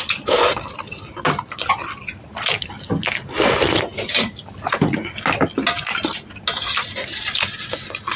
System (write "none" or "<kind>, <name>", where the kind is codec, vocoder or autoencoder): none